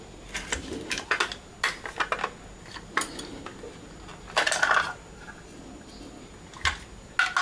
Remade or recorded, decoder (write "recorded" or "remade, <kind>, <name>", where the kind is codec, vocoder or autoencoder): recorded